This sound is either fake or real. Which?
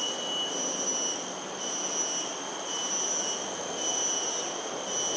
real